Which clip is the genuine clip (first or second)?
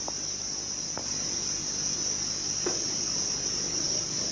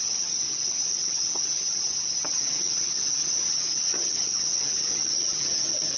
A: first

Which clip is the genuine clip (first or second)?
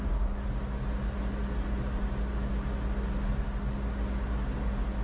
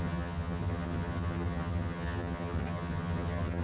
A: first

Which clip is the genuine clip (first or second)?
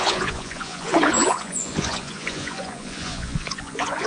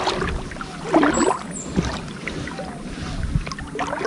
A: second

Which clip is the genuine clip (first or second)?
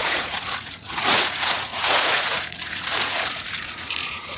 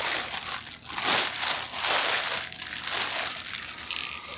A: second